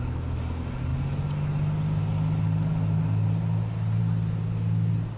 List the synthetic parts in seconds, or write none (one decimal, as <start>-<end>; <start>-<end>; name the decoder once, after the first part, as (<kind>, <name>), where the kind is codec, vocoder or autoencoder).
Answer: none